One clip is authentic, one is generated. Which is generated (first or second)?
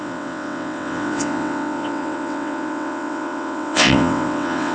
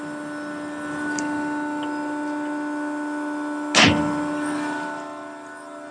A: first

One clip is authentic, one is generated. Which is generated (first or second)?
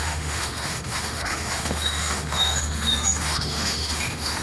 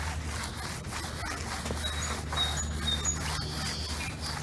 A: first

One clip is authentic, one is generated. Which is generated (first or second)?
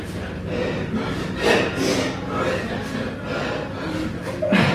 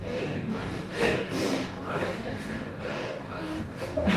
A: second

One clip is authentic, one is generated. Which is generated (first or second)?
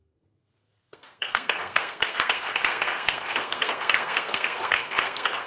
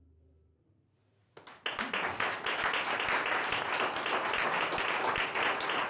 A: first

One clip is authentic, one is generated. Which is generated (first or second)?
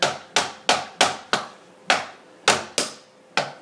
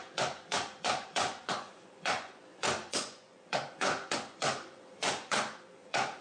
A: second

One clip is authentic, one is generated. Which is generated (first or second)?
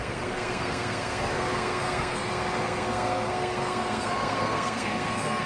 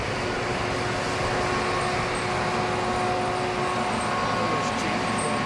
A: first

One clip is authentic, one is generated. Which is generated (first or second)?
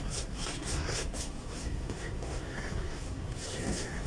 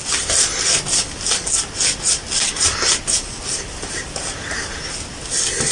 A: first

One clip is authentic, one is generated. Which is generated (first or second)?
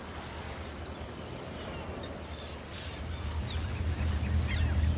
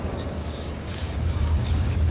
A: second